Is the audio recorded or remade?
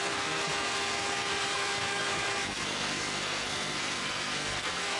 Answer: remade